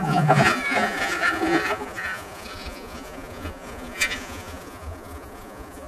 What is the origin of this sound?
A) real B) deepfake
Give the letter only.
B